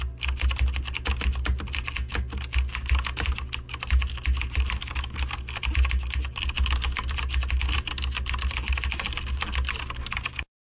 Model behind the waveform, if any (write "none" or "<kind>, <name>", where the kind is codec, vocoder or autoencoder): none